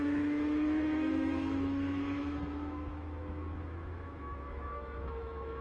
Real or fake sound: fake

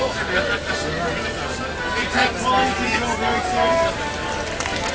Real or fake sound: real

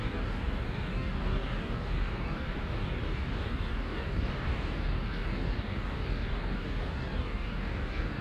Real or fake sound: fake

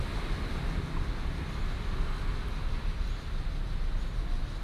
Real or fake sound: real